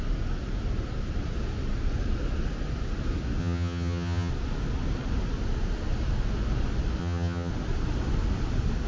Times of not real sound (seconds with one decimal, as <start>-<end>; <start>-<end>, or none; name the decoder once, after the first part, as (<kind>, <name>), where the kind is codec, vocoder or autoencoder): 3.4-4.3 (vocoder, HiFi-GAN); 7.0-7.5